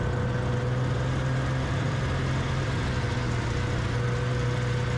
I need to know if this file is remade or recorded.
recorded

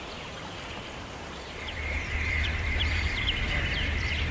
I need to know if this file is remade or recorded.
remade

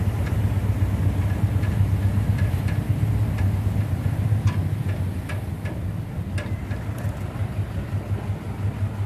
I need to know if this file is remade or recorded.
recorded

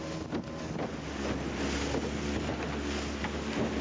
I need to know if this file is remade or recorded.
recorded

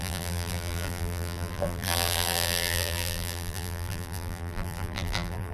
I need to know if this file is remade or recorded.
remade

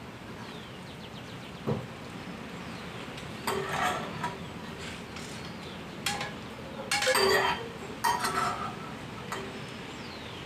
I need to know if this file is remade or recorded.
recorded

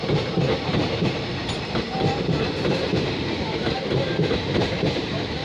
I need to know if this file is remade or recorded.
remade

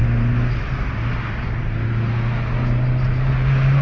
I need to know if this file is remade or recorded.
recorded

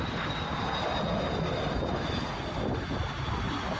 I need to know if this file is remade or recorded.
recorded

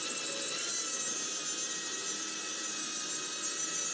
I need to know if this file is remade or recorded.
recorded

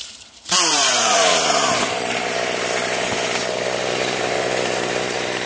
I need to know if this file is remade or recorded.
remade